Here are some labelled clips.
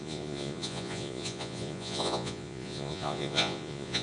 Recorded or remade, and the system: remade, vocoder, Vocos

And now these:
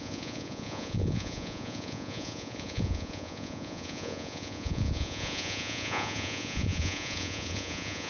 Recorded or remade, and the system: remade, vocoder, Vocos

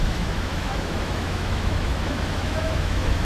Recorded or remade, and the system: remade, autoencoder, DAC-VAE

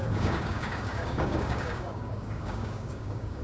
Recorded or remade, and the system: remade, codec, DAC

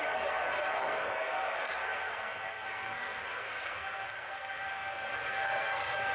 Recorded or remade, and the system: remade, codec, SNAC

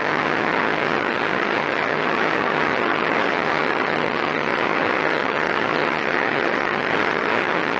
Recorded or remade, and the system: remade, vocoder, HiFi-GAN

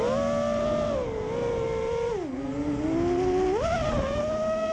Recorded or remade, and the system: recorded